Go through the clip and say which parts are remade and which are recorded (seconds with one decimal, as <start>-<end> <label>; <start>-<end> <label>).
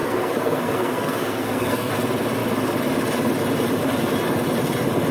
0.0-1.9 remade; 1.9-5.1 recorded